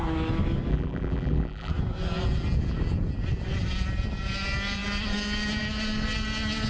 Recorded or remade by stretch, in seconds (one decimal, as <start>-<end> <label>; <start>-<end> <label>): 0.0-0.7 recorded; 0.7-1.7 remade; 1.7-6.7 recorded